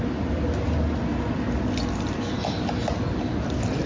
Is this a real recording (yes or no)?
yes